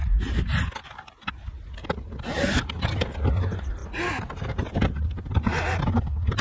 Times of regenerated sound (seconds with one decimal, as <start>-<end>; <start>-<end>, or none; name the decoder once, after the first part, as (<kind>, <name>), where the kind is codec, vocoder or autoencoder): none